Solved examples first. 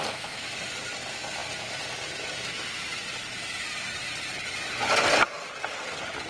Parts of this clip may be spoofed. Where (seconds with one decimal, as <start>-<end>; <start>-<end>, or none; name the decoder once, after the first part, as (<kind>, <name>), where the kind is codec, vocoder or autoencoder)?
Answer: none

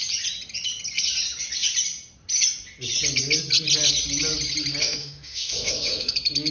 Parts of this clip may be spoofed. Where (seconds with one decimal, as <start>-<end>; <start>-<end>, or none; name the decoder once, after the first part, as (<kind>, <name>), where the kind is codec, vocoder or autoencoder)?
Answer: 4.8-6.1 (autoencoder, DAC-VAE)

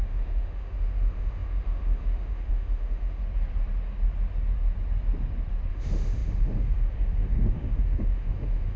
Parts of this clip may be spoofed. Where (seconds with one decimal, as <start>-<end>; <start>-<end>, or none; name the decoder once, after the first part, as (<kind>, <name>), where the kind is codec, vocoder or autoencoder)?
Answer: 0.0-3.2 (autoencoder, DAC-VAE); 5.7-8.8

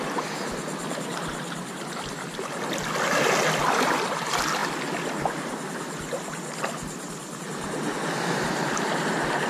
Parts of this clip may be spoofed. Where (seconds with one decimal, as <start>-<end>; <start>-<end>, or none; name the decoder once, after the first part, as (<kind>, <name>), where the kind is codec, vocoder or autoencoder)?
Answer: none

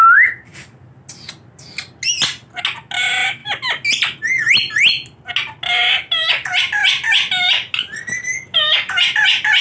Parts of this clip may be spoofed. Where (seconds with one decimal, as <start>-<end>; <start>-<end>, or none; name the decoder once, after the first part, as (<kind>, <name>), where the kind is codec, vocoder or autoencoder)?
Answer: none

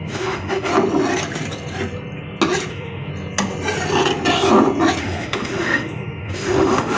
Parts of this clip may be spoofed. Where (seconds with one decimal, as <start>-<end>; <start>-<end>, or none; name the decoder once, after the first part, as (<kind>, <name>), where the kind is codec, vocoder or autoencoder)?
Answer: 0.0-0.7 (autoencoder, DAC-VAE); 2.7-3.1; 5.0-7.0